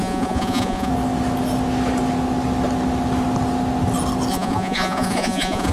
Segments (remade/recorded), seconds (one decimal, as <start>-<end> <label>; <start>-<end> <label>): 0.0-0.9 remade; 0.9-4.3 recorded; 4.3-5.7 remade